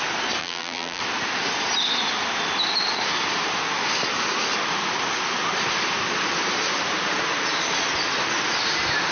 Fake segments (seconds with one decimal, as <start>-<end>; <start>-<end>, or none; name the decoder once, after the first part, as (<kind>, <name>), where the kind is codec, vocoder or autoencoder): 0.4-1.0 (vocoder, BigVGAN v2)